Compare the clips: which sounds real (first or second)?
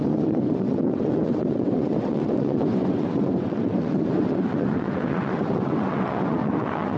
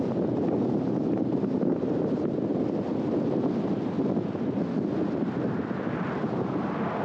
second